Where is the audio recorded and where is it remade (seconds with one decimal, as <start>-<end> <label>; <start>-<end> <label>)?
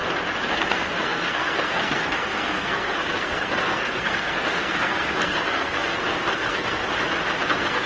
0.0-0.5 recorded; 0.5-6.8 remade; 6.8-7.5 recorded; 7.5-7.9 remade